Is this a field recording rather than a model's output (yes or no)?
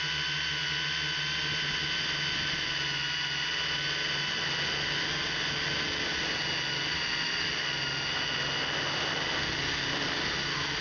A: yes